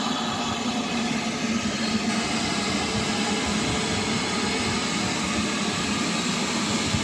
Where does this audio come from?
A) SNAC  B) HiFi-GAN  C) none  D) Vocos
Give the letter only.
C